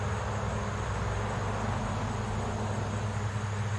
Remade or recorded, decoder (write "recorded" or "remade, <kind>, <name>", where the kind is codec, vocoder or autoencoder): recorded